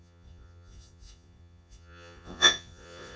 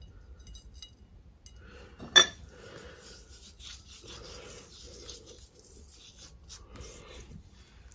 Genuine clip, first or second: second